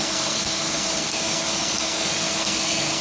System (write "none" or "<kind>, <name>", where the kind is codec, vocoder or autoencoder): codec, SNAC